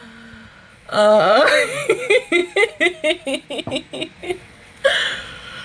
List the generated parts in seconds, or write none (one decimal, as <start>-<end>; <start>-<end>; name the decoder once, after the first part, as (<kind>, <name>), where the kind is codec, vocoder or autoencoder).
0.7-1.5 (vocoder, WaveNeXt); 4.2-5.6